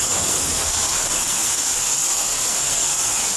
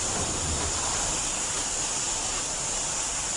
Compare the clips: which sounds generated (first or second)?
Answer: first